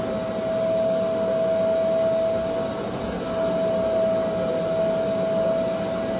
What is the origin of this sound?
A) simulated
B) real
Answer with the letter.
B